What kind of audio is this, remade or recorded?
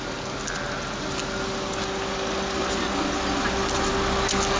recorded